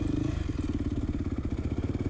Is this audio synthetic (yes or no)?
no